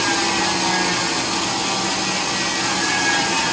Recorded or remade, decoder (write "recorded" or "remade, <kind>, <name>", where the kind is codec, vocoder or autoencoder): recorded